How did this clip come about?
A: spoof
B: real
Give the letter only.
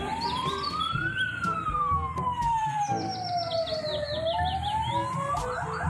A